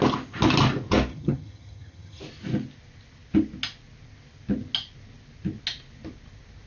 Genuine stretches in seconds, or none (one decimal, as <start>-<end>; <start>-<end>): 0.0-1.1; 2.2-6.7